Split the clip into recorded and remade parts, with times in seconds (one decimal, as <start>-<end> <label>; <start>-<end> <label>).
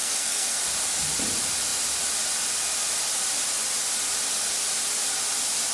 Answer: 0.0-0.6 remade; 0.6-5.7 recorded